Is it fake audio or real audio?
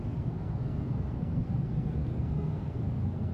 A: fake